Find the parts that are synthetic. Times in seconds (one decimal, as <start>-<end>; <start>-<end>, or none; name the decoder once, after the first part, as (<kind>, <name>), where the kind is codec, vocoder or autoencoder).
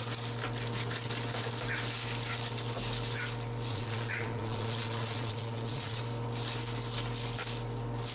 3.7-6.0 (vocoder, Vocos)